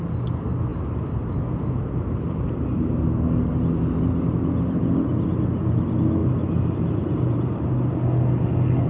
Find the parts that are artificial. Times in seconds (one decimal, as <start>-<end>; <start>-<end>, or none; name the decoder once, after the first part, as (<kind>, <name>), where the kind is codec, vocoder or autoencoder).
0.7-3.0 (vocoder, BigVGAN v2); 6.2-7.9